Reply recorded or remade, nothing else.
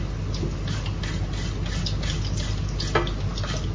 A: recorded